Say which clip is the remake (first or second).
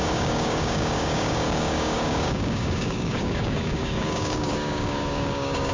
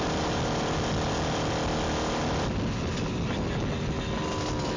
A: first